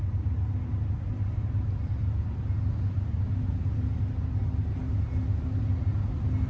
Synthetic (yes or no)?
no